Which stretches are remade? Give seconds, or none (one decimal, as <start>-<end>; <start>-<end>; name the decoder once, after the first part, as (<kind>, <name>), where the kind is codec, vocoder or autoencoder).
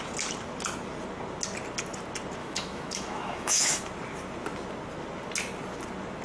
2.4-3.8 (autoencoder, DAC-VAE)